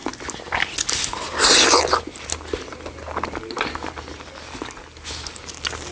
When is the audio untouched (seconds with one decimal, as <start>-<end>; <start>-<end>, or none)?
0.0-5.9